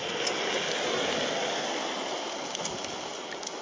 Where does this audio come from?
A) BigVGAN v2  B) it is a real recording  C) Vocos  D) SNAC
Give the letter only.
B